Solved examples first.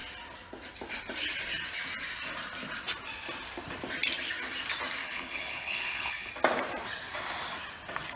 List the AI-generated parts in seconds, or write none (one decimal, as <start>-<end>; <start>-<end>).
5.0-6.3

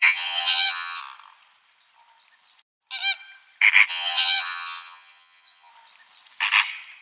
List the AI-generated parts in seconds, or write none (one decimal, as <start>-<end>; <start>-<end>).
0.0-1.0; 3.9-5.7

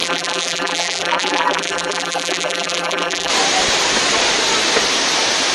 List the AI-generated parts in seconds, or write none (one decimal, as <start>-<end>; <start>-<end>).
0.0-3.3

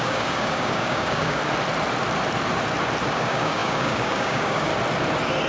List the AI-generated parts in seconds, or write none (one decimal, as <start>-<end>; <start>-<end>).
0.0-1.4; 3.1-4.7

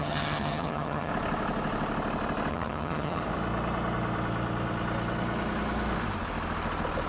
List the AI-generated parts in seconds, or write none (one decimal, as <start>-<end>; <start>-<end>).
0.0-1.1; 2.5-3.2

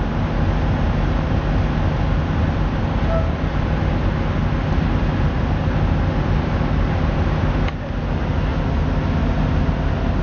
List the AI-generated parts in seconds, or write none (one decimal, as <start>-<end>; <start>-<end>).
2.4-3.8; 4.4-7.5

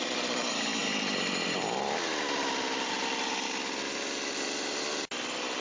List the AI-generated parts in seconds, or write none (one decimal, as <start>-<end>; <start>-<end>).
none